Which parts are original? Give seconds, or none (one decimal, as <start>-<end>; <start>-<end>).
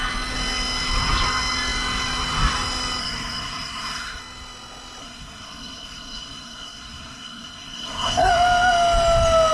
0.0-3.0; 4.2-5.0; 8.3-9.5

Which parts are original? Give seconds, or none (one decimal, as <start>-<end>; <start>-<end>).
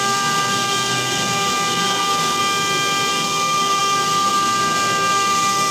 2.4-3.1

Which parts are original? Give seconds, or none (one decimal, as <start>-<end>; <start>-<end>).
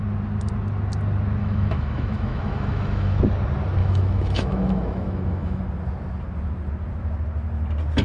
0.0-1.4; 3.2-3.8; 5.6-8.0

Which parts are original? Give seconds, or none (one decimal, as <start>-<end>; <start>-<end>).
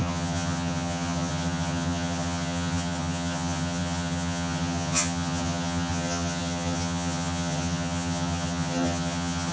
none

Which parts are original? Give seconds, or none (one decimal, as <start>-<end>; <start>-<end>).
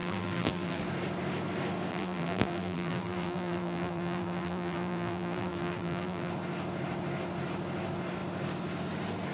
0.8-1.9; 6.3-9.3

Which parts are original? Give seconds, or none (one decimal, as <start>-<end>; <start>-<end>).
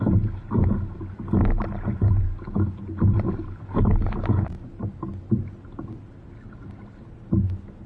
0.0-7.9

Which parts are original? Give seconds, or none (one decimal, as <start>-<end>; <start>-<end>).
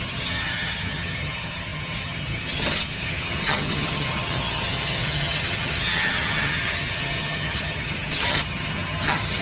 none